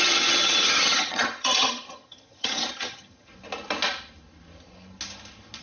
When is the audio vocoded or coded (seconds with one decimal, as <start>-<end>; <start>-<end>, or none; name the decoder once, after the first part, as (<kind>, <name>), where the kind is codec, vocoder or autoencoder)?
0.0-3.3 (vocoder, HiFi-GAN)